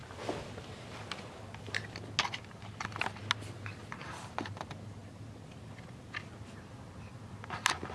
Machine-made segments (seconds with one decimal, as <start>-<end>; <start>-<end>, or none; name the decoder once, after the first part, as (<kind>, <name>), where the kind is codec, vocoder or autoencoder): none